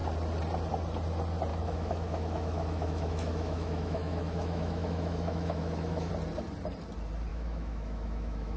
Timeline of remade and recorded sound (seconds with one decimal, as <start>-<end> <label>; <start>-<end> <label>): 0.0-1.5 recorded; 1.5-6.1 remade; 6.1-7.3 recorded; 7.3-8.6 remade